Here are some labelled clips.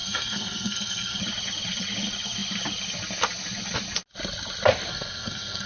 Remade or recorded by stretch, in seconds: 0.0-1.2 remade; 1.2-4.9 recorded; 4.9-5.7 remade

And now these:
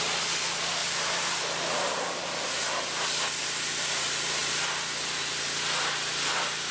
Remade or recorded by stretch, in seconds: 0.0-6.7 recorded